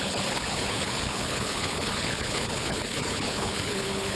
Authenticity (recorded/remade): remade